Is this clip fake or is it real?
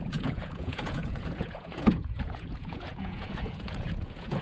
fake